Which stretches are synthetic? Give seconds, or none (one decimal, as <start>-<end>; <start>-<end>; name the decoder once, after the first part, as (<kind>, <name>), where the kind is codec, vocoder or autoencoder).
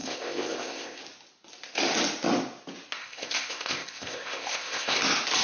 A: 0.0-1.0 (codec, ZipCodec); 3.0-5.0